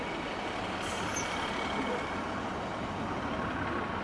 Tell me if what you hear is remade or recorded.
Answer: recorded